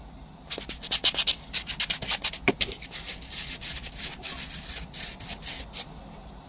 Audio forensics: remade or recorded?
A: recorded